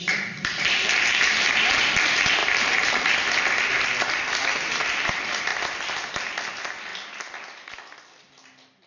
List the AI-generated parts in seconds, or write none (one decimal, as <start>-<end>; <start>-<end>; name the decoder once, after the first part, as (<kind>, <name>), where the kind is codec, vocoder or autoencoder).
none